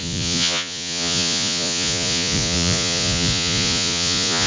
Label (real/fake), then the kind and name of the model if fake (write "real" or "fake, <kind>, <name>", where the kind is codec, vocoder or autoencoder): fake, vocoder, Vocos